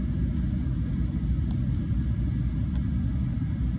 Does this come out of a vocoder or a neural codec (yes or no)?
no